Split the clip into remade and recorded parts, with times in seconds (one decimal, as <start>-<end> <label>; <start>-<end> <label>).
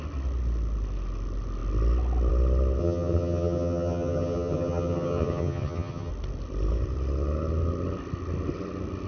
0.0-2.8 recorded; 2.8-6.1 remade; 6.1-9.1 recorded